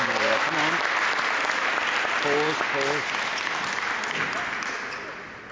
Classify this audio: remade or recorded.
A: recorded